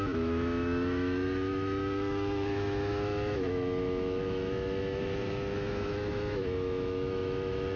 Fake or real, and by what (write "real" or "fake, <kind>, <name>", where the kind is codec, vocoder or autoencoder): fake, autoencoder, DAC-VAE